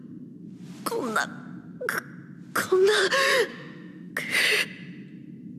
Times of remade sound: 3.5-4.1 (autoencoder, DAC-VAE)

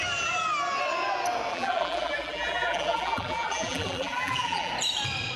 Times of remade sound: 1.5-4.7 (vocoder, BigVGAN v2)

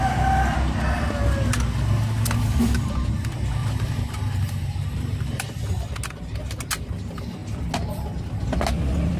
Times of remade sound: 3.6-5.6 (vocoder, BigVGAN v2)

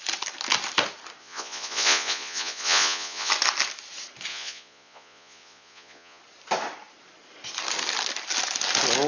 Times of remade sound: 1.2-3.3 (vocoder, Vocos); 4.3-6.2

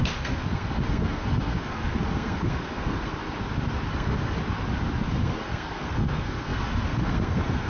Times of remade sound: 0.0-3.1 (codec, SNAC); 3.9-4.4; 5.1-7.7

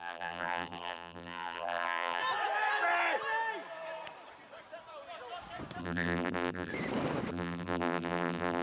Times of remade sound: 0.0-2.2 (vocoder, BigVGAN v2); 5.8-6.7; 7.3-8.6

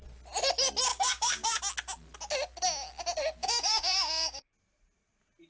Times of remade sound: 0.9-1.6 (codec, DAC); 3.4-4.5